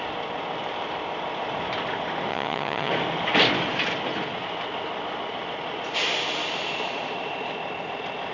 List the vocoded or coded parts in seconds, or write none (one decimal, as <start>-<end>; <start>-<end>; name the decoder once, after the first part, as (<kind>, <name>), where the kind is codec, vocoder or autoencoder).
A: 2.3-2.9 (vocoder, HiFi-GAN)